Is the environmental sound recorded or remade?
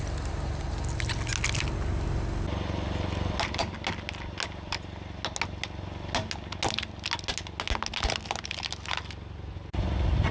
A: recorded